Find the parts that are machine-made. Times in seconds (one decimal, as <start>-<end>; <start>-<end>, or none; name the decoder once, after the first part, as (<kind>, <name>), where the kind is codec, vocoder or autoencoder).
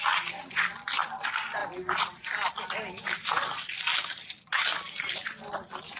none